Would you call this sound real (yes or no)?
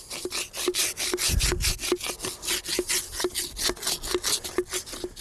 yes